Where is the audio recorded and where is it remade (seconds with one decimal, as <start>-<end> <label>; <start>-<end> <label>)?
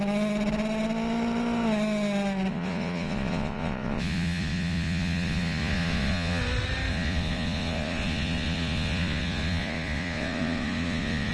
0.0-2.5 recorded; 2.5-6.4 remade; 6.4-6.9 recorded; 6.9-11.3 remade